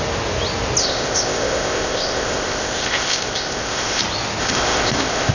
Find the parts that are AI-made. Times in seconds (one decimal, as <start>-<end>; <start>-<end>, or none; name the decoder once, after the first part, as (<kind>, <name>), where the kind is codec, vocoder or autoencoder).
0.8-4.0 (codec, ZipCodec); 4.4-5.3